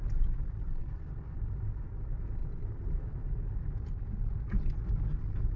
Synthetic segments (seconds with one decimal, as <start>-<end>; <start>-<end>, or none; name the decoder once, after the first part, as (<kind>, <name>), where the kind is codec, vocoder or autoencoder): 0.8-1.9 (vocoder, BigVGAN v2); 2.4-3.0